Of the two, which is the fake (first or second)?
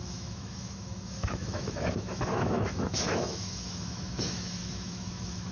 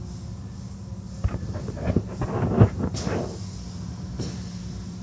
first